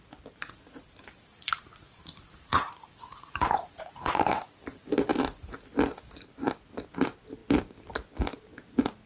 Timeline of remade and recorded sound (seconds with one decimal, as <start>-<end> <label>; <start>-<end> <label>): 0.0-1.3 recorded; 1.3-4.5 remade; 4.5-9.1 recorded